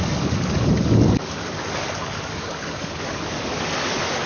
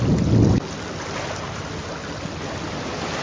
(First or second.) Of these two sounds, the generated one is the first